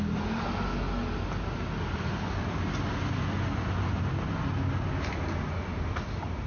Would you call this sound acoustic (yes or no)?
yes